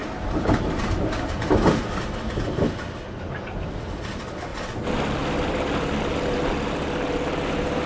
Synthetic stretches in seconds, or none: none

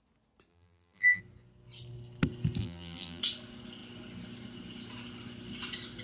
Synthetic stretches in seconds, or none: 0.5-1.2 (vocoder, BigVGAN v2); 2.6-3.2